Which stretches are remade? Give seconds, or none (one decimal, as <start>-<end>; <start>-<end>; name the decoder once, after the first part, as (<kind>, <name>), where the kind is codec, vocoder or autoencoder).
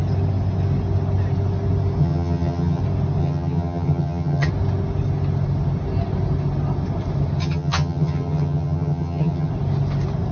2.0-2.8 (vocoder, HiFi-GAN); 3.2-4.5; 7.4-9.5